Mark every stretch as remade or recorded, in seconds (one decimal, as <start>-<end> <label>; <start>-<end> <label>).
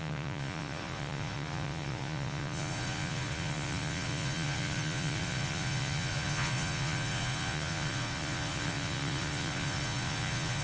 0.0-10.6 remade